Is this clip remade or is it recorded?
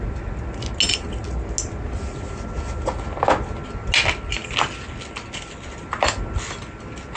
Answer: recorded